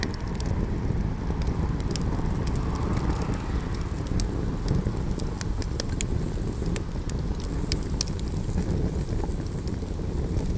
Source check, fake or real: real